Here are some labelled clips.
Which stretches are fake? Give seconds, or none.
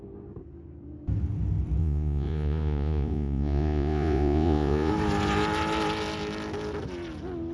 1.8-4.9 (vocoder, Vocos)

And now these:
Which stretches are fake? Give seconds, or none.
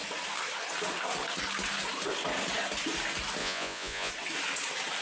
3.4-4.1 (vocoder, Vocos)